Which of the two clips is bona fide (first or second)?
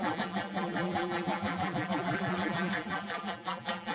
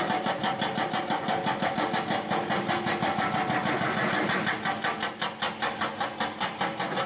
second